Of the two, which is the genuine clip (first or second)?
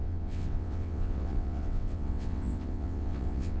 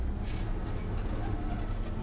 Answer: second